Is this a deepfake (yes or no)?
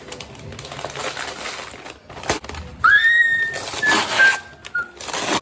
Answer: no